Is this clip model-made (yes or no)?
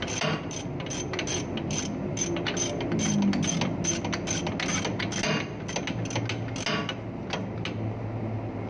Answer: no